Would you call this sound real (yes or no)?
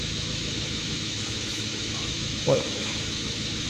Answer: no